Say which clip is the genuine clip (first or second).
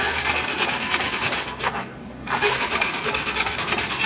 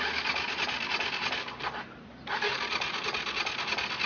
second